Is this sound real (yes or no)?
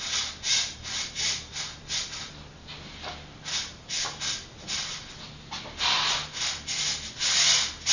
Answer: yes